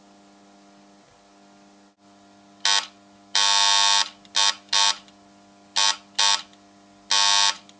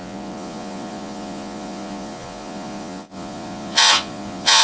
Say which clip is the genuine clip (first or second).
first